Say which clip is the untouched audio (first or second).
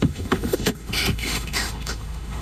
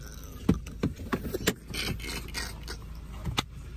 second